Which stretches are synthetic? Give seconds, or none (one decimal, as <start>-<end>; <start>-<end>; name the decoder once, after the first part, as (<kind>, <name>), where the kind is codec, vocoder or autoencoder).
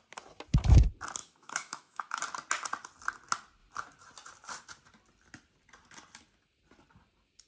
1.2-2.2 (autoencoder, DAC-VAE)